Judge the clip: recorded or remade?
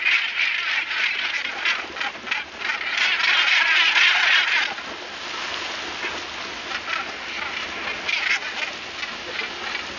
recorded